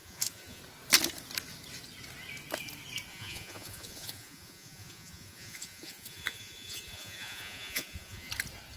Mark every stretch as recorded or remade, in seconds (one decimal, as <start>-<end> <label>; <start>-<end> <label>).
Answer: 0.0-0.6 remade; 0.6-3.1 recorded; 3.1-8.3 remade; 8.3-8.8 recorded